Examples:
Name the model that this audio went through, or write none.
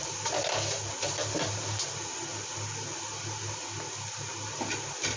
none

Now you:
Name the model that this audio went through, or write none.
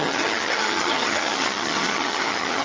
vocoder, HiFi-GAN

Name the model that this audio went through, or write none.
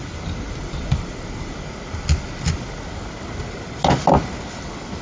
none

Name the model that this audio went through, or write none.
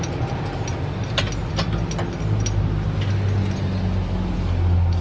none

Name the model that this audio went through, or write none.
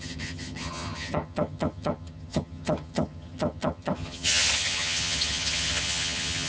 vocoder, HiFi-GAN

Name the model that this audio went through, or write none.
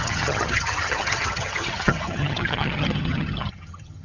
vocoder, HiFi-GAN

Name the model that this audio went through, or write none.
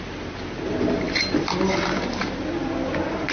none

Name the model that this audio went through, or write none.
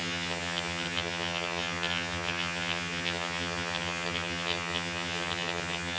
vocoder, HiFi-GAN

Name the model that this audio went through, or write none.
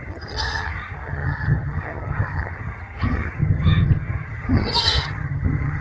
vocoder, HiFi-GAN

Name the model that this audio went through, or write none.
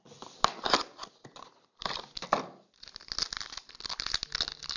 none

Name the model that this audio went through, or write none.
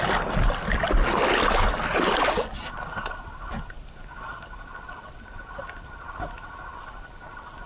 none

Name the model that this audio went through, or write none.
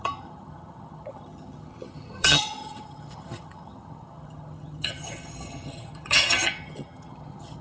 vocoder, HiFi-GAN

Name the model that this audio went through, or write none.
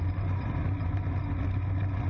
none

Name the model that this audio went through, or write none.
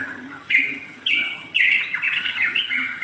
vocoder, HiFi-GAN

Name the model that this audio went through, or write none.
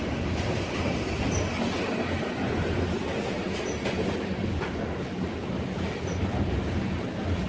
none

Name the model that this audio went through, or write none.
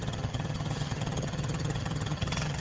vocoder, HiFi-GAN